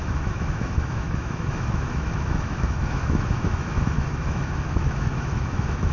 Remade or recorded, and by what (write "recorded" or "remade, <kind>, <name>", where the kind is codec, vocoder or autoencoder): remade, autoencoder, DAC-VAE